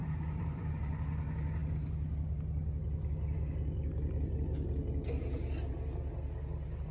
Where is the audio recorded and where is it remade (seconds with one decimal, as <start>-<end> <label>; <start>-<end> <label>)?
0.0-0.7 remade; 0.7-6.9 recorded